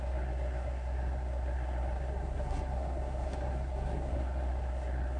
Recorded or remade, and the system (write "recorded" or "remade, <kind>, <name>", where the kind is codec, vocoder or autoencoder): remade, codec, SNAC